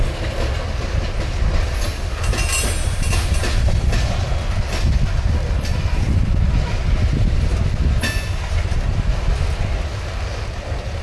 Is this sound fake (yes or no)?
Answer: no